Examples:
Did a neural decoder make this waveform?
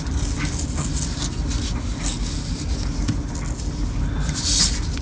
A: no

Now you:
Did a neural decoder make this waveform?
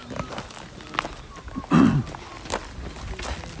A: no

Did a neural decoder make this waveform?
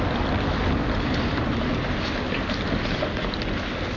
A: no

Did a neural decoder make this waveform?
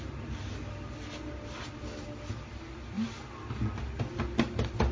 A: no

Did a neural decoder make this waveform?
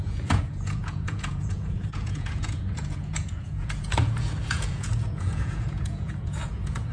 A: yes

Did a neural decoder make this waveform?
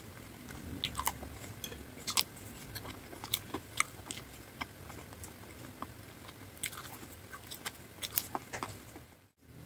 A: no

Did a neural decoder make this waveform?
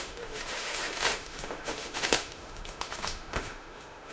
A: yes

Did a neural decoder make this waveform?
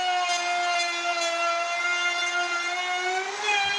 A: no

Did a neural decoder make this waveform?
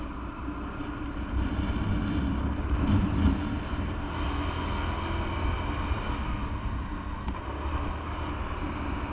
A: no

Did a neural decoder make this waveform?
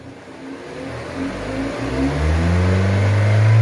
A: no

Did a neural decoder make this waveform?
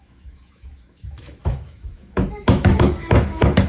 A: yes